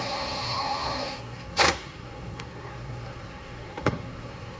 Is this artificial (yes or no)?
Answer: yes